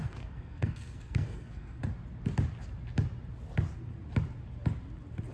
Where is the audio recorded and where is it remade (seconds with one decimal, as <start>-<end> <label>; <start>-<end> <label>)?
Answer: 0.0-1.8 remade; 1.8-5.3 recorded